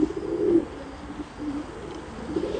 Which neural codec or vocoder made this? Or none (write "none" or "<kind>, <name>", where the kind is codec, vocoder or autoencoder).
none